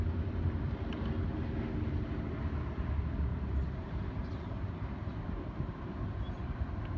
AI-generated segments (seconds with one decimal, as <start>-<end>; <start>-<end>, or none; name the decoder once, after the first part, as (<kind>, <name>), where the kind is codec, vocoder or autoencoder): 3.3-6.6 (vocoder, BigVGAN v2)